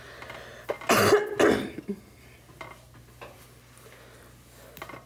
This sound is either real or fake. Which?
real